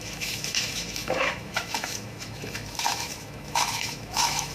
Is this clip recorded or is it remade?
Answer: remade